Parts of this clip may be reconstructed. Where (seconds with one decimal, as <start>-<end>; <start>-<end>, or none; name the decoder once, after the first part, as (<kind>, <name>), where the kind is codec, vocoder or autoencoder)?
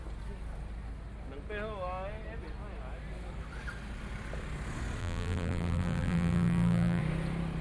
5.0-7.0 (vocoder, BigVGAN v2)